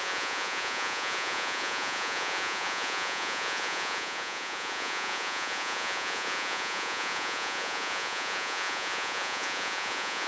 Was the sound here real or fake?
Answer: fake